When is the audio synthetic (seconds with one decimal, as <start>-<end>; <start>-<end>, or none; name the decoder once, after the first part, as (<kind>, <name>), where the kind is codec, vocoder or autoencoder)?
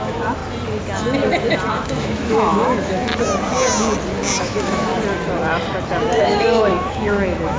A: 0.0-0.4 (autoencoder, DAC-VAE); 1.7-3.1; 4.4-4.9; 6.2-7.6